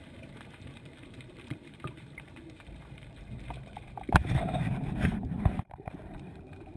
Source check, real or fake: fake